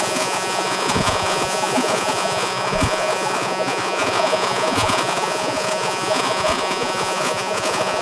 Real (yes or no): no